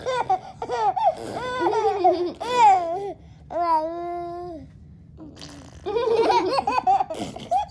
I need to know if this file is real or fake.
real